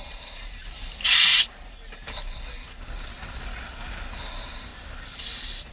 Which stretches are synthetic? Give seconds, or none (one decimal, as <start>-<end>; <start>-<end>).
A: 0.0-1.3; 4.2-4.7